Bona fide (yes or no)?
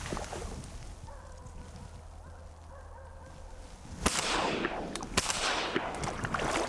yes